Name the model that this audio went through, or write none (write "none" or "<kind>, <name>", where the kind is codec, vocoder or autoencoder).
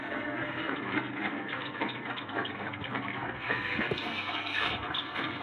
codec, SNAC